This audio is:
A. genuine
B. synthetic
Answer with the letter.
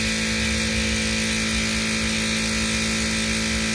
A